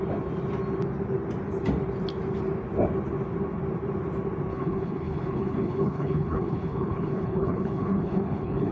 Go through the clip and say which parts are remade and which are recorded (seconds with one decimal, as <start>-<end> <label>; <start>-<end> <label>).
0.0-4.5 recorded; 4.5-8.7 remade